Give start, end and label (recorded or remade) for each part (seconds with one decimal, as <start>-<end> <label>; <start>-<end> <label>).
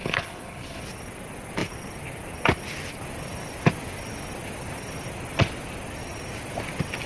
0.0-0.8 remade; 0.8-7.1 recorded